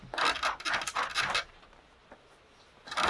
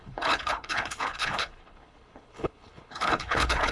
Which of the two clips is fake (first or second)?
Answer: second